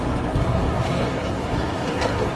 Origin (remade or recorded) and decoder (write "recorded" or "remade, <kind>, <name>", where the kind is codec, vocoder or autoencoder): remade, codec, SNAC